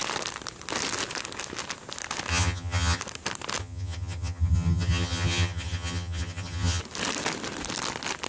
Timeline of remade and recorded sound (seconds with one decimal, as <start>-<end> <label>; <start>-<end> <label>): 0.0-2.3 recorded; 2.3-3.0 remade; 3.0-3.6 recorded; 3.6-6.8 remade; 6.8-8.3 recorded